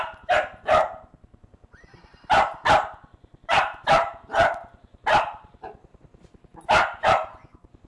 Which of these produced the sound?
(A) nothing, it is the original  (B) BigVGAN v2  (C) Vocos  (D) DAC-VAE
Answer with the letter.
B